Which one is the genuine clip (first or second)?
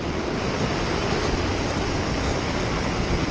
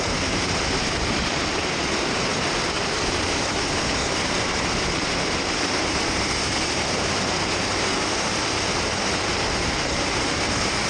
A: first